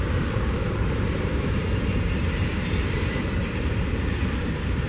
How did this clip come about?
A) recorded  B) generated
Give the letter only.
B